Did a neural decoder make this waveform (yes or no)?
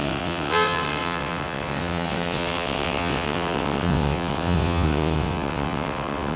yes